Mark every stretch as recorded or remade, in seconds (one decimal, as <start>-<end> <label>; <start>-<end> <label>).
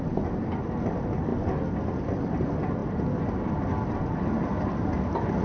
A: 0.0-5.4 recorded